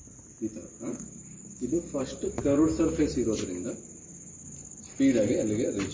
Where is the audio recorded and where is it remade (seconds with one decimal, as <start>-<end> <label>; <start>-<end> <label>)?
0.0-0.9 recorded; 0.9-1.8 remade; 1.8-5.9 recorded